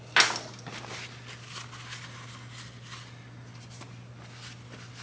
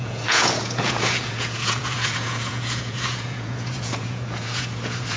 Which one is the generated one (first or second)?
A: second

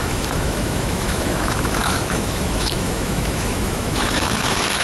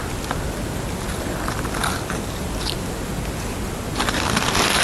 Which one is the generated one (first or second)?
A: first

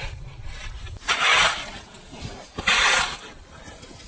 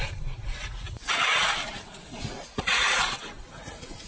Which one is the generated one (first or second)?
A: second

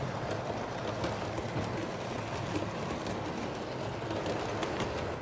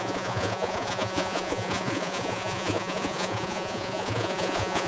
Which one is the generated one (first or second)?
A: second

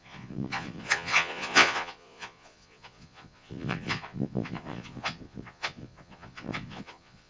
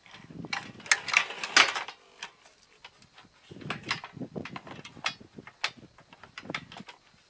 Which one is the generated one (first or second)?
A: first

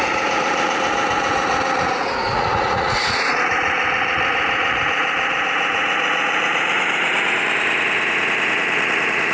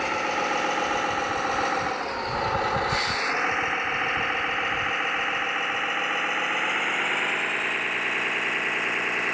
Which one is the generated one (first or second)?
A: first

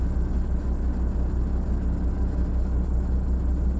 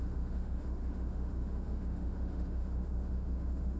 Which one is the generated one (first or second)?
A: second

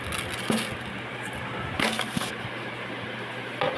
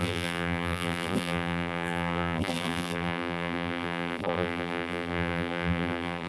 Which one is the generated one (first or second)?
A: second